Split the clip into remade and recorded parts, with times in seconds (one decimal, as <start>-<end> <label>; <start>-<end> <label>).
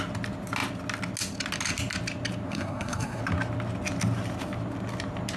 0.0-2.5 recorded; 2.5-3.2 remade; 3.2-5.4 recorded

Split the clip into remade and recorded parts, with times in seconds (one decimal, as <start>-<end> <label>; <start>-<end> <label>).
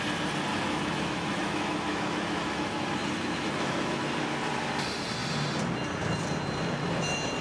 0.0-0.5 recorded; 0.5-4.0 remade; 4.0-7.4 recorded